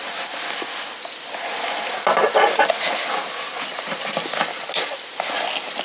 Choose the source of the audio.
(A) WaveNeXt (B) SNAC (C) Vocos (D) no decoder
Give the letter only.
D